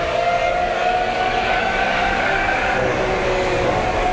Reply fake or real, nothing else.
fake